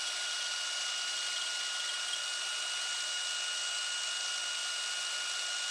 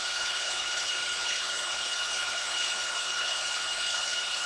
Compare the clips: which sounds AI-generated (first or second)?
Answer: second